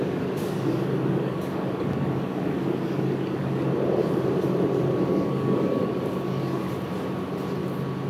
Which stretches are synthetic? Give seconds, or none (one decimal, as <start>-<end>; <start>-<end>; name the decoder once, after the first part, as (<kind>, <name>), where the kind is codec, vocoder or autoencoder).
0.0-3.7 (codec, DAC); 5.1-6.6